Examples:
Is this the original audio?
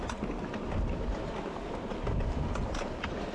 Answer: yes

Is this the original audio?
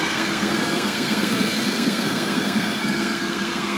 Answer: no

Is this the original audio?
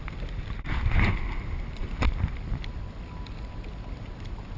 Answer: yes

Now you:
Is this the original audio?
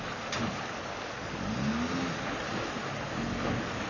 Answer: yes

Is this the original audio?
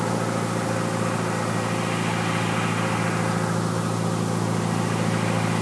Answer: yes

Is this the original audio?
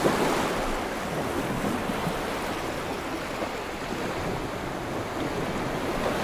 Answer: yes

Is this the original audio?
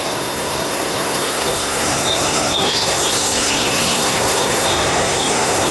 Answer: no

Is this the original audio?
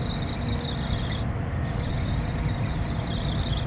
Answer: yes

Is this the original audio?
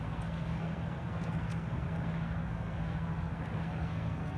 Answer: no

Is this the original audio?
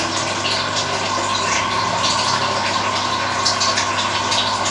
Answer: yes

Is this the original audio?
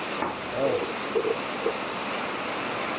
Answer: yes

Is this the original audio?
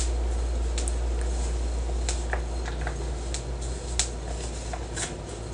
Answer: yes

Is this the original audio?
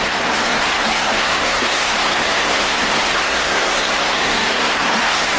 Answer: no